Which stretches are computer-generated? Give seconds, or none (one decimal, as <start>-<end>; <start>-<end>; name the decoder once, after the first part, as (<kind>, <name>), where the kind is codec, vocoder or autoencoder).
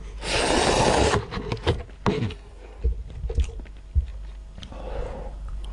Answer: 2.1-2.8 (codec, SNAC)